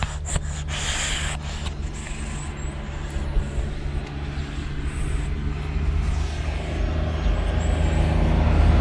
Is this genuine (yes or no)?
yes